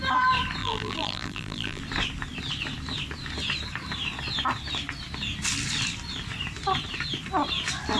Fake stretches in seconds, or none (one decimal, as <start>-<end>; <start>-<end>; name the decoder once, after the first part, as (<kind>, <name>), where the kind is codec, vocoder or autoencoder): 0.6-1.8 (vocoder, BigVGAN v2)